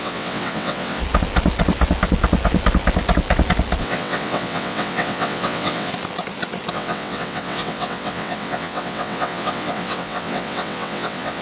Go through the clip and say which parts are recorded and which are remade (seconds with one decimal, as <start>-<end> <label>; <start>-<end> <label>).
0.0-1.0 remade; 1.0-3.8 recorded; 3.8-5.9 remade; 5.9-6.7 recorded; 6.7-11.4 remade